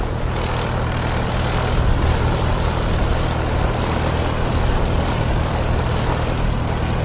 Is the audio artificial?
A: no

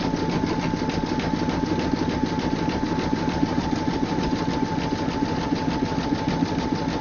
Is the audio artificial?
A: no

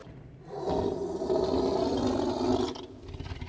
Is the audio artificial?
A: no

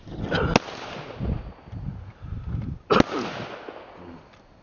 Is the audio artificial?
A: no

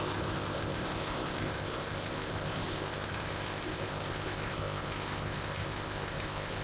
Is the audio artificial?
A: yes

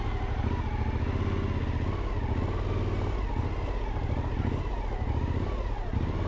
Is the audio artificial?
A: no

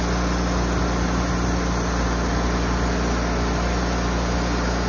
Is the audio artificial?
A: no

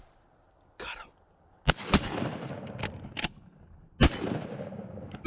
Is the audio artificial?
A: no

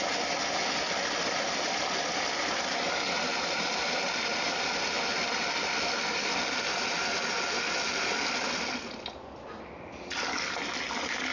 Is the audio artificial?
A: no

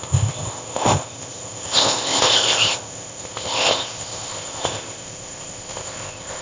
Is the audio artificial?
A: yes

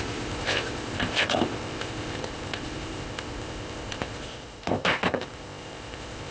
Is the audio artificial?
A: yes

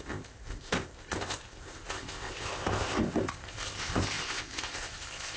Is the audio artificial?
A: yes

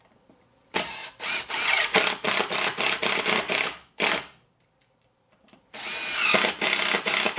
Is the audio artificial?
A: no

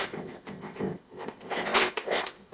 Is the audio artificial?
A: yes